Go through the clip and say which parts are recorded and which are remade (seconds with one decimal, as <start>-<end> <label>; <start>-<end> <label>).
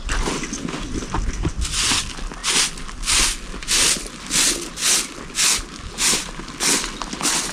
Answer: 0.0-7.5 recorded